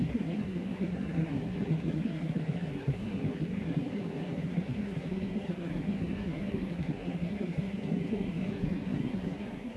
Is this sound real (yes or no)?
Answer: no